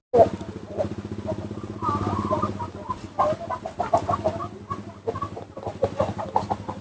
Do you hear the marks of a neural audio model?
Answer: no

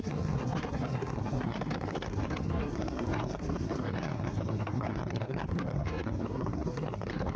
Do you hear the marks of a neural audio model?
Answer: yes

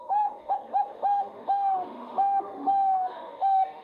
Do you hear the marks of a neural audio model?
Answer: yes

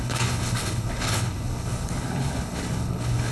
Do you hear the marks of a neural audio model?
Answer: yes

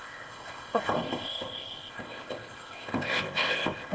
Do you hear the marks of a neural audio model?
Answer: yes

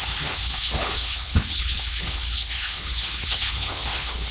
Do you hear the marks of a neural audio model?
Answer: yes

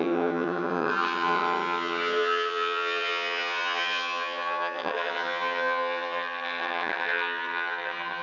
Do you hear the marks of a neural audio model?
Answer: yes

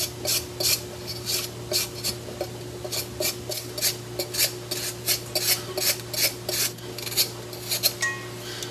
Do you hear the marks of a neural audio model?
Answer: no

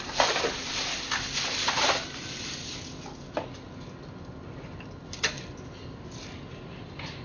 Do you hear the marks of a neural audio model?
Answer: no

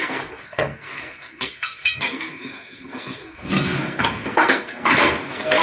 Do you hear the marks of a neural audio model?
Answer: yes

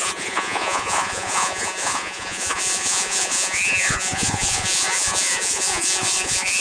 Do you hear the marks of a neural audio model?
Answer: yes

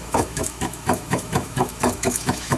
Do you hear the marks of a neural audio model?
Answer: yes